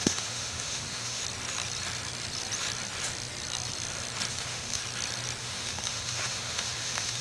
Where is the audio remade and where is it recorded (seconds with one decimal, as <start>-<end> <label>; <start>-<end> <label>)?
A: 0.0-1.2 remade; 1.2-4.3 recorded; 4.3-4.8 remade; 4.8-5.4 recorded; 5.4-7.2 remade